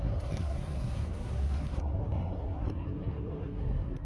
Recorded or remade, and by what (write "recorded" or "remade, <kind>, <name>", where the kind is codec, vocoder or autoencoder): remade, codec, SNAC